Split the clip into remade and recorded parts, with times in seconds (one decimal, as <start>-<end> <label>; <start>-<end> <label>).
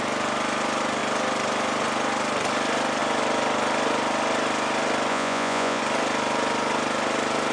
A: 0.0-5.1 recorded; 5.1-5.8 remade; 5.8-7.5 recorded